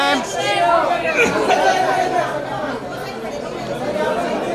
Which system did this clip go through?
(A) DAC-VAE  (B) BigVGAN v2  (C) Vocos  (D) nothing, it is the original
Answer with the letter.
D